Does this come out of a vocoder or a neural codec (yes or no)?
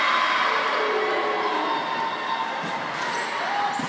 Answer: no